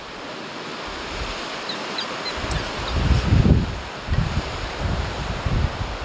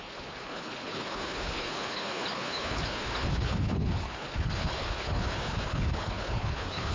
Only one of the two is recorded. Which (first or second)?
first